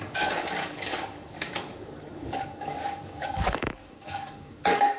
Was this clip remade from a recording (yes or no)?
yes